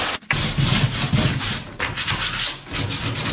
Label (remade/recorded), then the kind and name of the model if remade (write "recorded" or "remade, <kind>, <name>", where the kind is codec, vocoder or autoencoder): recorded